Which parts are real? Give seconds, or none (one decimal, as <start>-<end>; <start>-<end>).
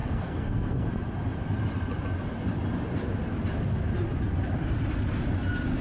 0.9-5.8